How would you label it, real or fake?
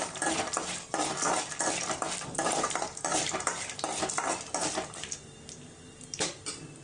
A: real